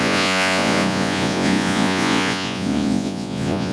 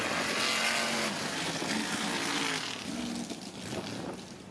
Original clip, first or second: second